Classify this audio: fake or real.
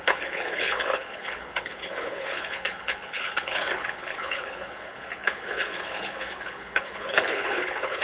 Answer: fake